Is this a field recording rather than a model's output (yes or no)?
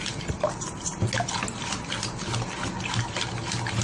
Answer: yes